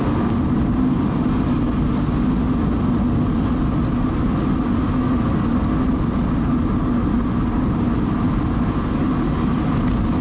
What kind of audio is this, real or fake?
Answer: real